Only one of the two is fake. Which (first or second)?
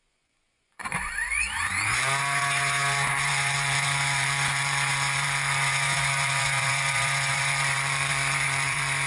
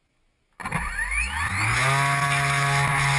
first